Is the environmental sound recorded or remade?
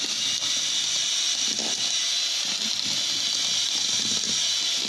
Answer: recorded